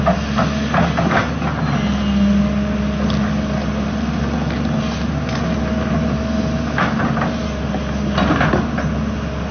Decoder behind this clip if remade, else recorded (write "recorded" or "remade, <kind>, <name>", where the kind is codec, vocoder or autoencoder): recorded